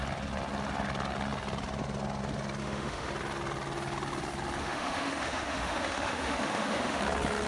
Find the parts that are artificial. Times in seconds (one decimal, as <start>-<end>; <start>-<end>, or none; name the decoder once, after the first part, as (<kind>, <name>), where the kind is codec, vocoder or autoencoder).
2.6-3.1 (autoencoder, DAC-VAE); 4.6-7.0